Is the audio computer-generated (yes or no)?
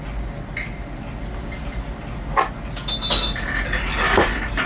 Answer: no